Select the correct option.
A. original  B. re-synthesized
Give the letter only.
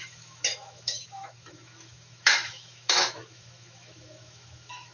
B